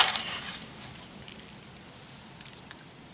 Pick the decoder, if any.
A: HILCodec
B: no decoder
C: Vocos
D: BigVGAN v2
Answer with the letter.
B